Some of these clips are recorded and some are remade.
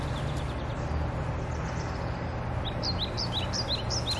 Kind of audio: recorded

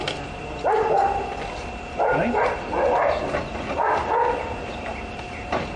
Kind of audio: recorded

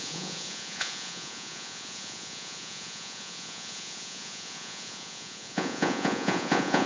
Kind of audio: remade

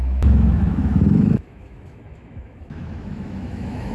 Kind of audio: remade